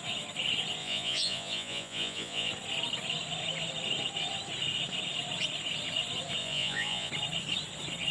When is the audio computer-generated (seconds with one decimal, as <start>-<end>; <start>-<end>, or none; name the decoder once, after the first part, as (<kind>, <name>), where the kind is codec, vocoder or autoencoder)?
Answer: 0.8-2.5 (vocoder, Vocos); 6.4-7.1

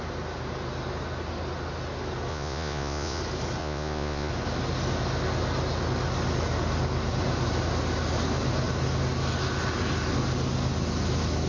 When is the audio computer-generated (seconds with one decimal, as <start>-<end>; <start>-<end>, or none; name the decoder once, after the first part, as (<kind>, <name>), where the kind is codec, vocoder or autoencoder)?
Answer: 2.3-3.2 (vocoder, Vocos); 3.6-4.3